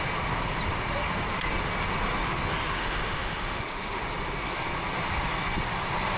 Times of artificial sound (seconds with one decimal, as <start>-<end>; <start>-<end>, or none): 2.8-4.0